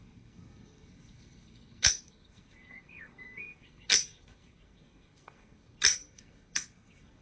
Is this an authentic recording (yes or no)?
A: no